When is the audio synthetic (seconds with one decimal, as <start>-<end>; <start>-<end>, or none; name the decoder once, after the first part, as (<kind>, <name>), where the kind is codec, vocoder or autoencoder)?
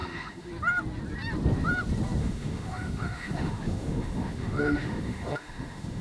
0.0-0.5 (autoencoder, DAC-VAE); 2.2-6.0